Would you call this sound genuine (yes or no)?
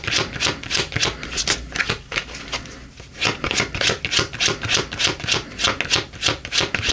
yes